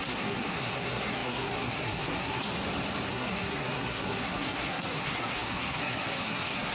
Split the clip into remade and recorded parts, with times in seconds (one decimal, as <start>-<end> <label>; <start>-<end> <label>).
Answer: 0.0-2.5 remade; 2.5-3.1 recorded; 3.1-6.7 remade